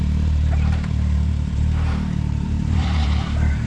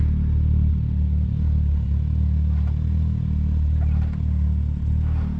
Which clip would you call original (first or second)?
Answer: second